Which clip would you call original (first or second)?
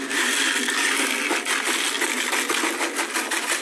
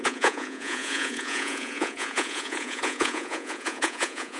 first